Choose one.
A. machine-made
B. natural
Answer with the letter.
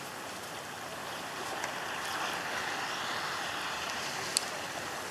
B